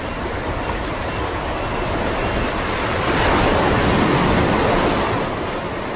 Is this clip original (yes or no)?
yes